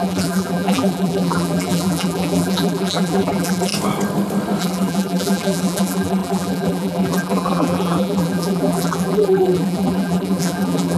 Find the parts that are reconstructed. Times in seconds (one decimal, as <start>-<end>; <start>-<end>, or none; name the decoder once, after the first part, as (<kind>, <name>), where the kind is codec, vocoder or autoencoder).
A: 0.0-3.7 (vocoder, BigVGAN v2); 4.6-11.0